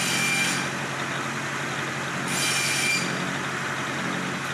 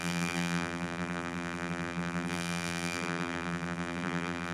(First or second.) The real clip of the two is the first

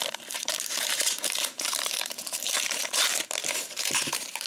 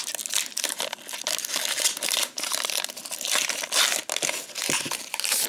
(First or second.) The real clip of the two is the second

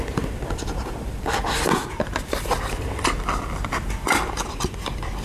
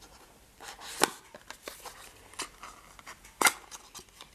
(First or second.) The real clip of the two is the second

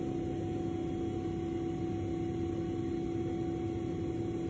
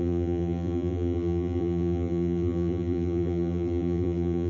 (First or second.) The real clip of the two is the first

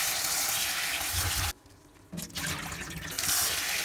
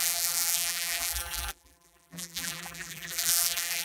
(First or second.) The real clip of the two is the first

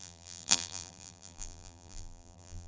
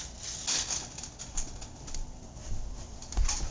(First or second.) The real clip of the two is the second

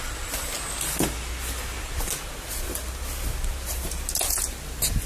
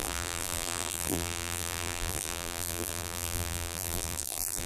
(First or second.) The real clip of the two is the first